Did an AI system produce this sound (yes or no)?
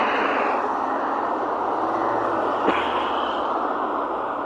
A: no